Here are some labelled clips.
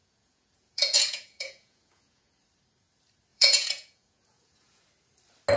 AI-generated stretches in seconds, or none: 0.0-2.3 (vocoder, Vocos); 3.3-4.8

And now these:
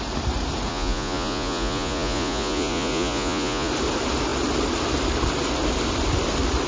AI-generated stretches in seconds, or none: 0.7-3.7 (vocoder, Vocos)

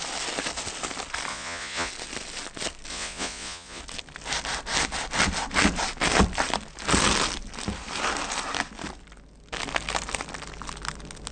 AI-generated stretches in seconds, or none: 1.3-1.9 (vocoder, Vocos); 2.9-3.8

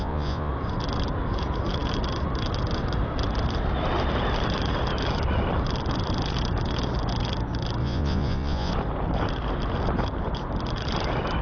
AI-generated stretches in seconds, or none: 0.0-0.5 (vocoder, Vocos); 7.8-8.7

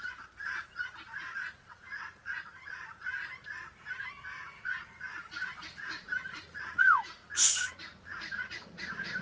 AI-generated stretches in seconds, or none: 0.0-3.1 (vocoder, Vocos); 4.6-9.2